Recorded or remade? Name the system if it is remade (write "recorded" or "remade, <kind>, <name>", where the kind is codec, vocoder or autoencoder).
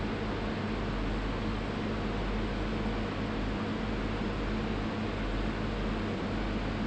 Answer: recorded